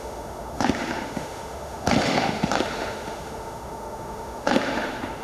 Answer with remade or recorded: remade